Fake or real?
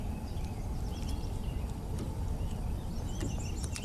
fake